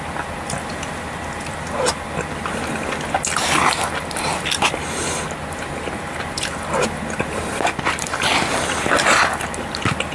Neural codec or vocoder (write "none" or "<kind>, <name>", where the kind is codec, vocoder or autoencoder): none